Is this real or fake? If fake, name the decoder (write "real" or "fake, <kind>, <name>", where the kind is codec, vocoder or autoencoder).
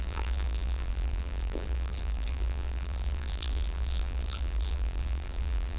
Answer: fake, vocoder, BigVGAN v2